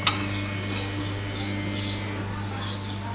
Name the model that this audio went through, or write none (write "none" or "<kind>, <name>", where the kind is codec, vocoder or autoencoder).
none